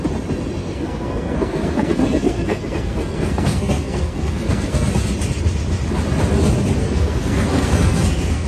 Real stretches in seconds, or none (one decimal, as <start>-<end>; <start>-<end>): 0.0-0.6; 4.9-6.8